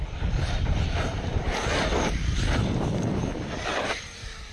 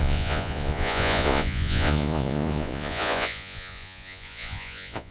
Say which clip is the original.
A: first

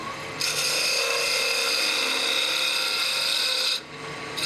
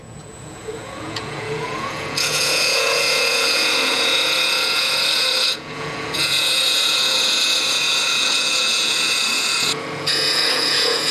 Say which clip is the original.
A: first